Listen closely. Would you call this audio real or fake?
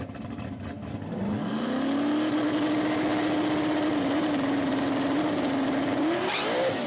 real